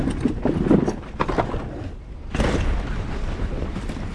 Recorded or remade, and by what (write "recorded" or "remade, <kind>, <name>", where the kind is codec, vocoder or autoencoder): recorded